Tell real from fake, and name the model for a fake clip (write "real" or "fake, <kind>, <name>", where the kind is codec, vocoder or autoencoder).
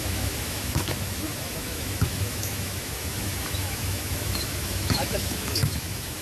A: fake, autoencoder, DAC-VAE